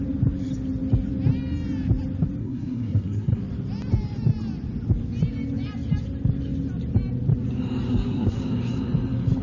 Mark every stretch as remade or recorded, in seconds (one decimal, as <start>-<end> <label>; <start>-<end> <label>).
0.0-2.4 recorded; 2.4-3.4 remade; 3.4-7.9 recorded; 7.9-8.4 remade; 8.4-9.4 recorded